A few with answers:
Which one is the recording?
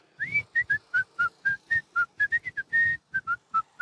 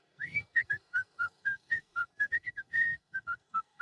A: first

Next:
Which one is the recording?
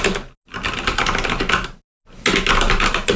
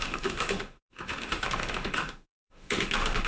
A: first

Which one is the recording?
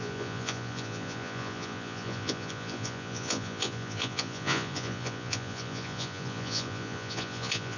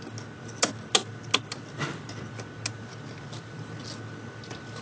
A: second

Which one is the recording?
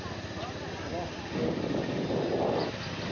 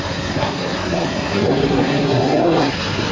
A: first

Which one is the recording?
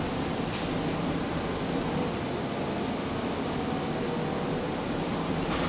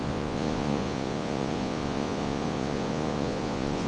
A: first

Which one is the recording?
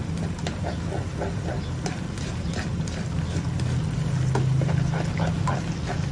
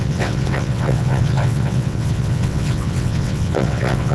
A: first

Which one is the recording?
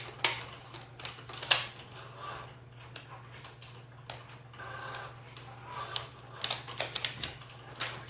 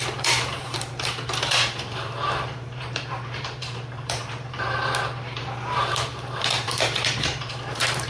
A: first